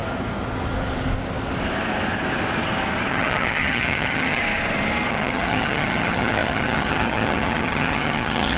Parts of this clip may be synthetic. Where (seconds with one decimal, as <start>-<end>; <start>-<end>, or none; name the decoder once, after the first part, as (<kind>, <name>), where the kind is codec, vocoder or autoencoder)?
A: 3.1-4.4 (vocoder, HiFi-GAN); 5.1-8.6